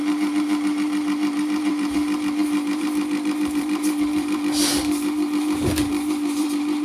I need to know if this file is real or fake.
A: fake